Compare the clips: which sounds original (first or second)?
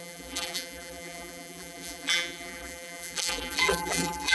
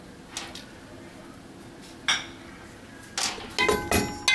second